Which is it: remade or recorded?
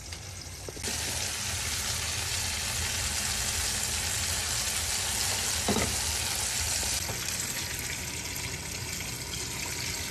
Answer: recorded